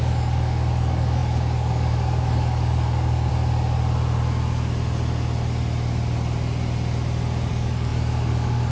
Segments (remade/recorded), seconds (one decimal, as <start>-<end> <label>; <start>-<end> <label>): 0.0-3.3 remade; 3.3-7.5 recorded; 7.5-8.7 remade